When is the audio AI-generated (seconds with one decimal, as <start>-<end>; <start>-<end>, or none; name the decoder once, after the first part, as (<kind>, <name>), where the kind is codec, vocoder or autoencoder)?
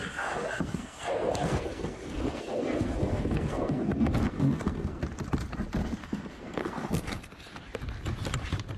0.0-5.0 (codec, SNAC); 6.0-7.2